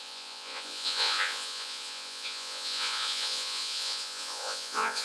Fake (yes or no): yes